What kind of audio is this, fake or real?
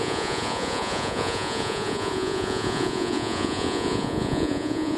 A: fake